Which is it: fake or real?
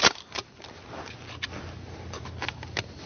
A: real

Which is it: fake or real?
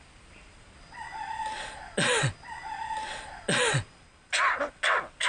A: real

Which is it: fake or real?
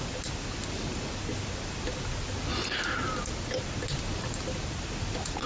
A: real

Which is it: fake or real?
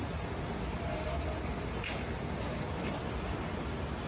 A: real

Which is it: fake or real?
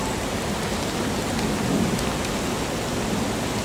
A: real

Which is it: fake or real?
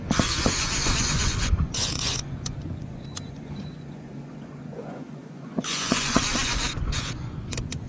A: fake